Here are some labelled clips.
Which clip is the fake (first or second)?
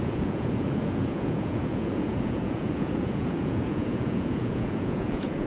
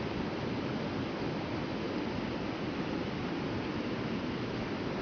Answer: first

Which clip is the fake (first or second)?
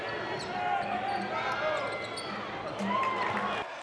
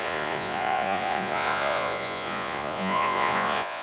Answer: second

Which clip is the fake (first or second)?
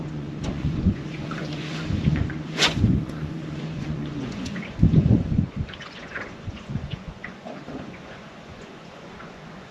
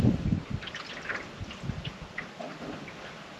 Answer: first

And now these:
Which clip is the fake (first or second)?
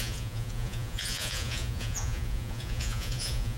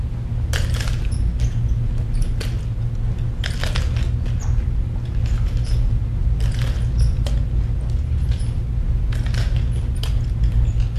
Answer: first